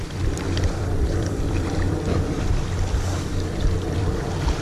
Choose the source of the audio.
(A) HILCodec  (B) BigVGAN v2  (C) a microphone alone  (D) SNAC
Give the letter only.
B